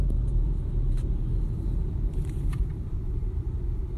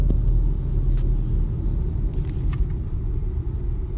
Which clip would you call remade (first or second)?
first